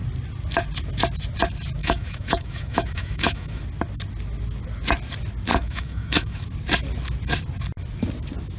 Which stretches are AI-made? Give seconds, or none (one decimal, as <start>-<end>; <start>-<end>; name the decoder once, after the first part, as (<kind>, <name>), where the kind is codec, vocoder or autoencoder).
1.8-3.6 (autoencoder, DAC-VAE); 5.5-6.4